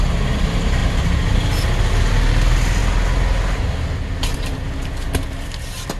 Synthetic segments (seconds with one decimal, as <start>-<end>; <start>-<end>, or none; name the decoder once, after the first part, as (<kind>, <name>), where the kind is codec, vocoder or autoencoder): none